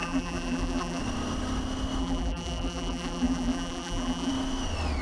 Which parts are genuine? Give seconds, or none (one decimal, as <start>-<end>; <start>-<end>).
1.0-2.0; 4.3-5.0